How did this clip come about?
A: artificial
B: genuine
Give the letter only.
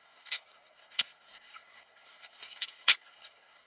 A